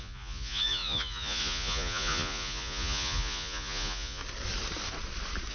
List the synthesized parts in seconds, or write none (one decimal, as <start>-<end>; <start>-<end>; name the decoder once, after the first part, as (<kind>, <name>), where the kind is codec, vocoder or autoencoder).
0.0-4.2 (vocoder, Vocos)